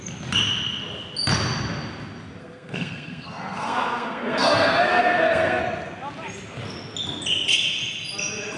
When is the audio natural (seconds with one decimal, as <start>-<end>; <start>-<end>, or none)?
0.0-2.4; 5.6-8.6

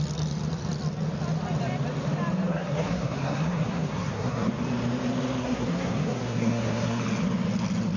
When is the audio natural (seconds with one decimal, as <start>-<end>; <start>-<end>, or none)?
0.0-2.5; 4.5-5.4; 7.0-8.0